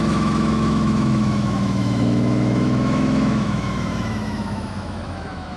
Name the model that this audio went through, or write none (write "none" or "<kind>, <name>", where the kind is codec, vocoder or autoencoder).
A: autoencoder, DAC-VAE